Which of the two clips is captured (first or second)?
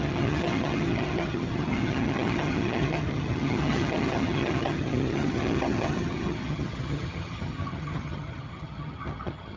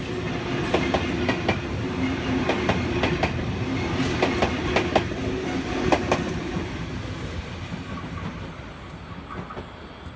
second